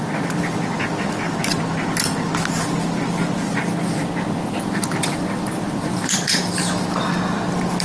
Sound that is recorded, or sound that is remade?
recorded